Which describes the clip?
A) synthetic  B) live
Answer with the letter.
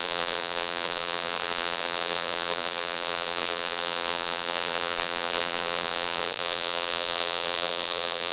A